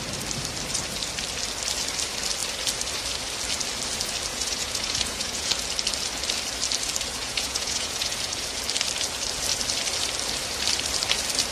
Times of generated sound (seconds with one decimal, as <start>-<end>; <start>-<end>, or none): 4.3-5.5; 7.2-8.6